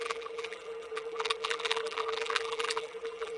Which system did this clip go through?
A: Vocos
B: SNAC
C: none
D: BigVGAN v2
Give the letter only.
D